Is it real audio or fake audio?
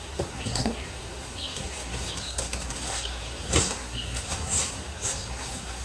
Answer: fake